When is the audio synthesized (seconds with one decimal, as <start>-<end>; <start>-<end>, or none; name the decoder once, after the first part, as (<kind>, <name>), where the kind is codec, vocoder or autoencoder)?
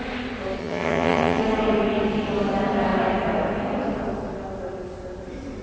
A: 0.6-1.4 (vocoder, HiFi-GAN)